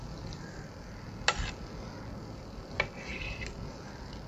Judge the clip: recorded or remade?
recorded